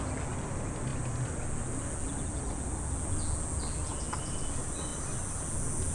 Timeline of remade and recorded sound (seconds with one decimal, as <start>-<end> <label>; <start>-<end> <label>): 0.0-5.9 recorded